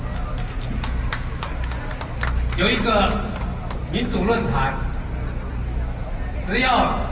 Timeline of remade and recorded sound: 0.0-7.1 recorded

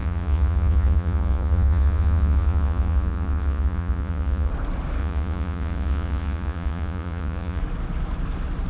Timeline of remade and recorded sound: 0.0-4.5 remade; 4.5-5.0 recorded; 5.0-7.6 remade; 7.6-8.7 recorded